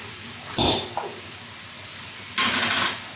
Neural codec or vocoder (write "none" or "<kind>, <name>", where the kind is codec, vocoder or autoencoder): none